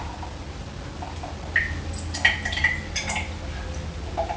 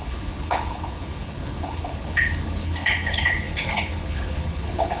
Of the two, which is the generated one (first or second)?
second